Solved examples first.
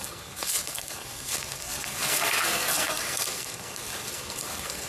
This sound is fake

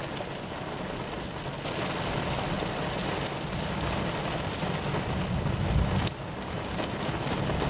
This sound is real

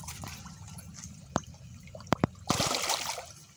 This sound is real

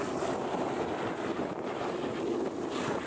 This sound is real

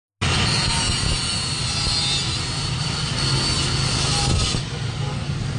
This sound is real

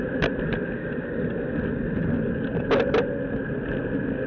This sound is real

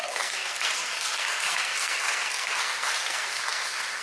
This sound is fake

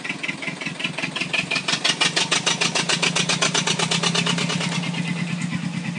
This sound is real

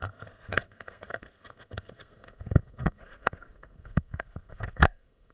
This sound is fake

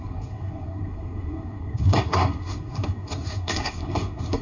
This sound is fake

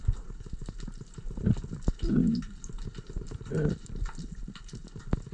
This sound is real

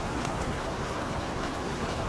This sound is fake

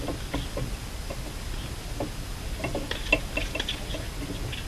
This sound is real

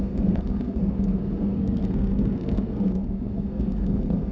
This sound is fake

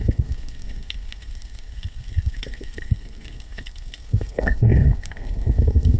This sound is fake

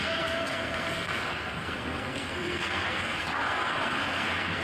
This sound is fake